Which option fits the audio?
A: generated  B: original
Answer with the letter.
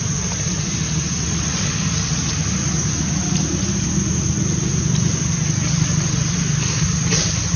B